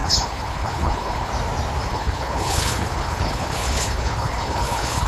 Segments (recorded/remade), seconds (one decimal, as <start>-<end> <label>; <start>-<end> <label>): 0.0-1.3 remade; 1.3-1.9 recorded; 1.9-5.1 remade